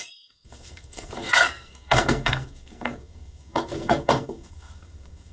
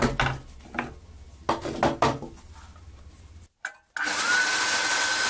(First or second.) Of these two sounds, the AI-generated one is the first